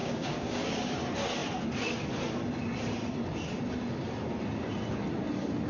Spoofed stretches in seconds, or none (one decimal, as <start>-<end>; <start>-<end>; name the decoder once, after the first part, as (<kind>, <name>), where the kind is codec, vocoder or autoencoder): 0.0-0.9 (codec, DAC)